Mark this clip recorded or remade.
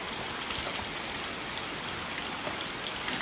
recorded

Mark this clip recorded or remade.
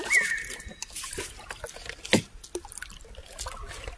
recorded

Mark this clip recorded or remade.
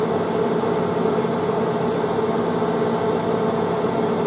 recorded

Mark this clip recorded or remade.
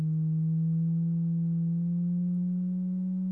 recorded